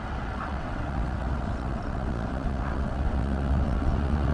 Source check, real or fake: fake